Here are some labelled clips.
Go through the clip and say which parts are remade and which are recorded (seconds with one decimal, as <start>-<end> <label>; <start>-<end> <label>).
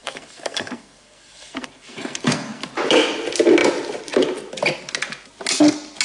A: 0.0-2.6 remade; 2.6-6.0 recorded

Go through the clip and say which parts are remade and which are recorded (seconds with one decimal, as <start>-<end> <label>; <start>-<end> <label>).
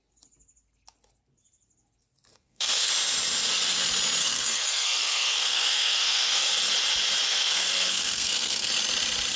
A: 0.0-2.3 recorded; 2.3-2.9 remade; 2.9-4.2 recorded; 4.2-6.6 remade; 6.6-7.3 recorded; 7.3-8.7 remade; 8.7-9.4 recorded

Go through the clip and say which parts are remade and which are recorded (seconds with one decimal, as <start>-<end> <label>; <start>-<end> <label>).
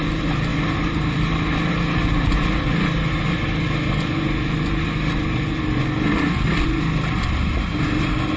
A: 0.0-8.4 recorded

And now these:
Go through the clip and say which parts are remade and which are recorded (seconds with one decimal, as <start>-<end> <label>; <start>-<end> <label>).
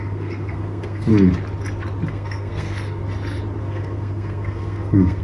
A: 0.0-1.1 remade; 1.1-2.1 recorded; 2.1-3.0 remade; 3.0-3.6 recorded; 3.6-5.2 remade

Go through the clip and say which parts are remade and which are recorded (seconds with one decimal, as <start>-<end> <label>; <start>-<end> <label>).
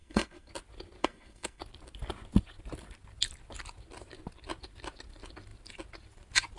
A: 0.0-0.5 remade; 0.5-1.0 recorded; 1.0-1.6 remade; 1.6-6.6 recorded